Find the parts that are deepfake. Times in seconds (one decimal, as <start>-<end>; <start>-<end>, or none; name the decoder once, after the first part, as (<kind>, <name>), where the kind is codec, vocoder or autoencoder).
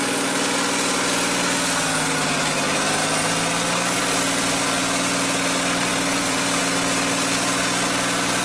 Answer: 3.0-4.8 (vocoder, BigVGAN v2); 5.9-6.6